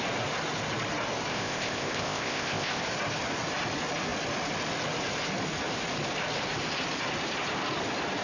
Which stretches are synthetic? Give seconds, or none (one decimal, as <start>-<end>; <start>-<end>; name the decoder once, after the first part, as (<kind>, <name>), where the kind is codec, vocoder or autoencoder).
1.3-2.8 (codec, ZipCodec)